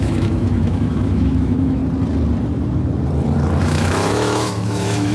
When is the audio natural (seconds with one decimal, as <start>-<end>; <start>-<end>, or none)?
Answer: 1.8-3.6